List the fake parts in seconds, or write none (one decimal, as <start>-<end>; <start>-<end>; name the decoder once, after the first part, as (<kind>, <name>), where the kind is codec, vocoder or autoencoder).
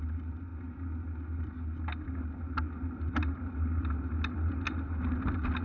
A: none